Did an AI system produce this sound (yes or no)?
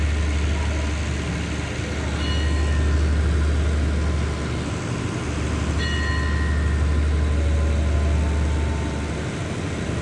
no